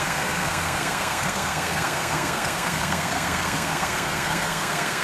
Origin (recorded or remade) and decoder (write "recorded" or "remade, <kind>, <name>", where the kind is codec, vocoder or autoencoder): remade, codec, SNAC